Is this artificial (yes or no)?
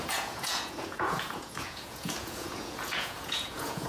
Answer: yes